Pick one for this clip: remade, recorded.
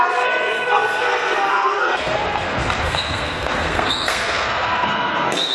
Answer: remade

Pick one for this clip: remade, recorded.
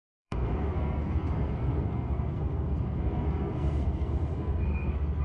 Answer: remade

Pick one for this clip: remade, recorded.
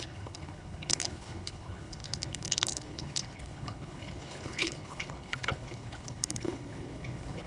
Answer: remade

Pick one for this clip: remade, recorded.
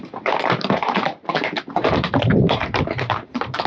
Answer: remade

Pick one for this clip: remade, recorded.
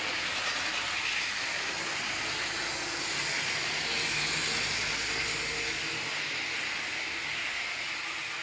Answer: recorded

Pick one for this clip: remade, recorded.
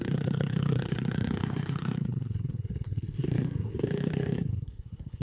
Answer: remade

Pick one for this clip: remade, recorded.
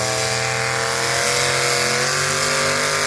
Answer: recorded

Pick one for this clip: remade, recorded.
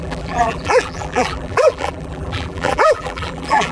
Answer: remade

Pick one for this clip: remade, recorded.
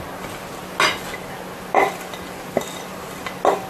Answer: recorded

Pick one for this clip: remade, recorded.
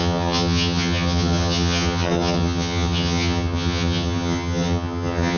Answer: remade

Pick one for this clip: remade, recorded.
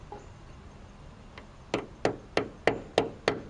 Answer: recorded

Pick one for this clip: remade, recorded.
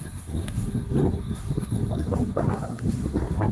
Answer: remade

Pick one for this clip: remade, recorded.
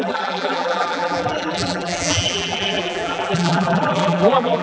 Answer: remade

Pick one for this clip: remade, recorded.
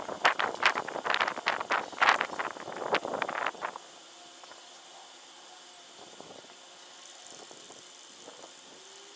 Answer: recorded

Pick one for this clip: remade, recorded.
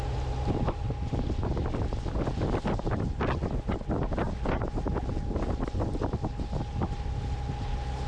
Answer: recorded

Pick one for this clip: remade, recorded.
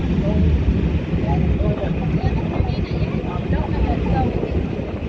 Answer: recorded